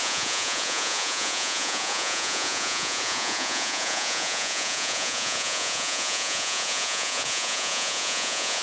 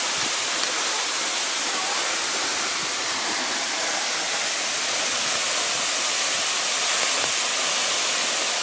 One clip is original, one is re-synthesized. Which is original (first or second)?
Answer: second